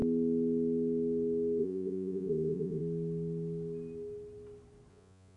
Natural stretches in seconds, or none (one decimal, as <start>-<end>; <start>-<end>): 0.0-1.6; 2.8-4.9